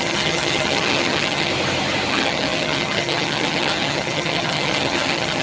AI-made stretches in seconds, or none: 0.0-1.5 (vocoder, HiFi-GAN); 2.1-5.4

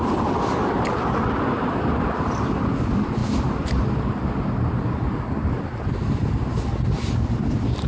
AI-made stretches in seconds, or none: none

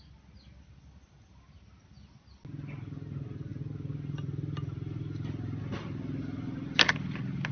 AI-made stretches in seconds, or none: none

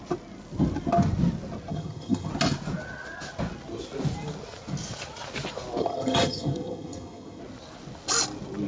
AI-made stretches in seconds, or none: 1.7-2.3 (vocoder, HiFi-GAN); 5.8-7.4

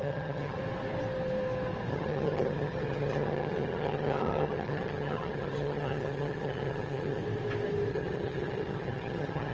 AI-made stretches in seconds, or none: 0.0-0.6 (vocoder, HiFi-GAN); 1.9-7.2; 7.9-9.5